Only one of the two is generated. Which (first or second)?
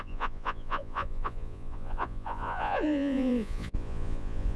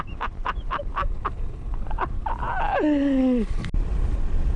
first